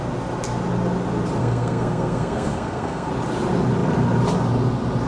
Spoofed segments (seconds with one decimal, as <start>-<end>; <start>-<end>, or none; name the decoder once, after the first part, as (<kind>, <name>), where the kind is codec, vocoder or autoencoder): 1.4-3.1 (codec, SNAC)